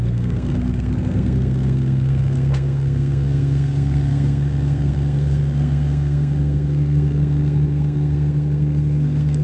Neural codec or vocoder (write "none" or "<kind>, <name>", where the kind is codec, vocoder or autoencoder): codec, SNAC